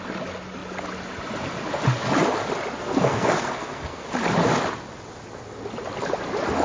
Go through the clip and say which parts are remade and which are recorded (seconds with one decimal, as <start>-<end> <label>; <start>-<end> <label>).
0.0-2.8 recorded; 2.8-4.1 remade; 4.1-6.6 recorded